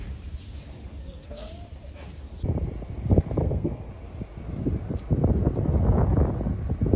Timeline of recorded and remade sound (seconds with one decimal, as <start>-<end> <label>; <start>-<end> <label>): 0.0-1.0 recorded; 1.0-1.5 remade; 1.5-3.4 recorded; 3.4-3.9 remade; 3.9-7.0 recorded